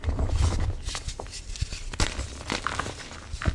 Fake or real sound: real